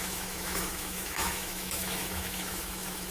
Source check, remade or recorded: remade